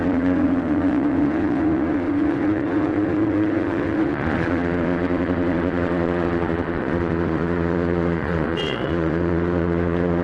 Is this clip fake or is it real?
fake